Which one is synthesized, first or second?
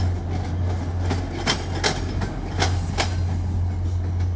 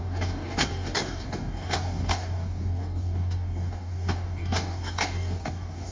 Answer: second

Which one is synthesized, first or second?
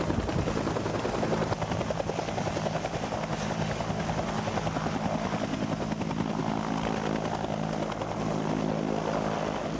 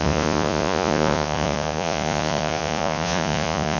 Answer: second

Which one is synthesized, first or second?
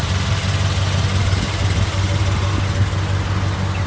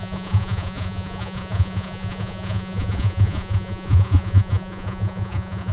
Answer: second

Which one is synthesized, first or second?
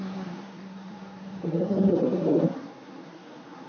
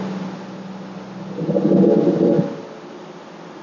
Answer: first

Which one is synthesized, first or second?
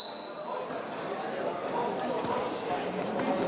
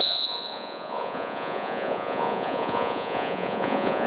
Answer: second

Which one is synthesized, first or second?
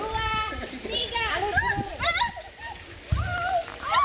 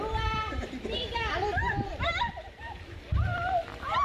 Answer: second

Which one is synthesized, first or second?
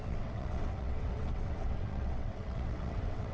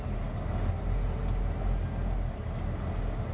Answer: first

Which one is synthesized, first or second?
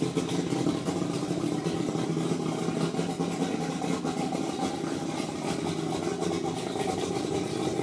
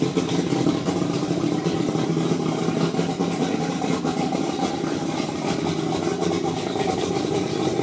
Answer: second